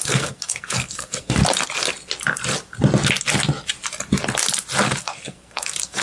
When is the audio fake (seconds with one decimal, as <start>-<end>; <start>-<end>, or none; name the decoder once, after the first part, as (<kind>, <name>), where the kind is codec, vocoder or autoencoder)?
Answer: 0.0-1.4 (codec, SNAC); 5.0-6.0